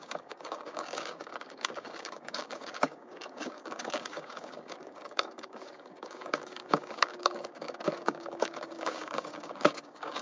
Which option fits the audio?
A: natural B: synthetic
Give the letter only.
B